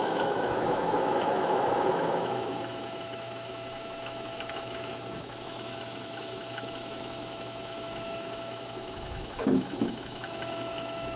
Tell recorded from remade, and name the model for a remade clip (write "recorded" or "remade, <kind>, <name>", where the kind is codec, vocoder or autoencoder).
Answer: remade, autoencoder, DAC-VAE